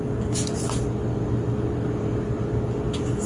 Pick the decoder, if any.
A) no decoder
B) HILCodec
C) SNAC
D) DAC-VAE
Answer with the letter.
A